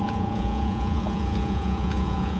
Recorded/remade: remade